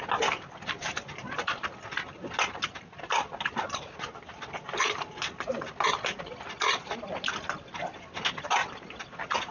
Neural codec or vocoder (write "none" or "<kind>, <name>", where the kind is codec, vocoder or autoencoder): none